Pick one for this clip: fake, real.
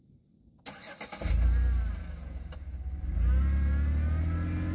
real